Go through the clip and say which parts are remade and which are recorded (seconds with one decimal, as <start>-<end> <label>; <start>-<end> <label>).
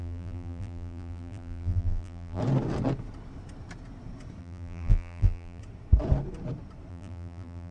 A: 0.0-2.4 remade; 2.4-4.4 recorded; 4.4-5.6 remade; 5.6-6.9 recorded; 6.9-7.7 remade